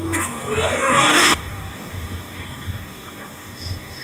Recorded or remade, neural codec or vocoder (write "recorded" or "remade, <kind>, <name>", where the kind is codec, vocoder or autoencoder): remade, codec, DAC